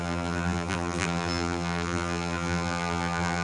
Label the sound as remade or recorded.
remade